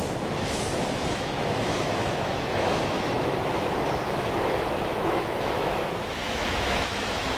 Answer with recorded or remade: remade